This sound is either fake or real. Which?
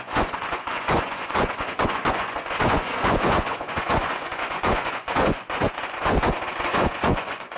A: fake